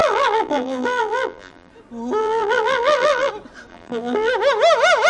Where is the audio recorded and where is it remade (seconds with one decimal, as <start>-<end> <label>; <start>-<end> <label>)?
0.0-1.7 remade; 1.7-2.2 recorded; 2.2-3.3 remade; 3.3-3.7 recorded; 3.7-4.3 remade; 4.3-5.1 recorded